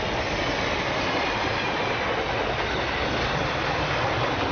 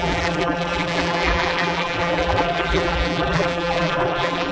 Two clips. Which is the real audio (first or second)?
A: first